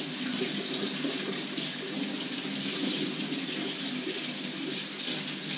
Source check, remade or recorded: recorded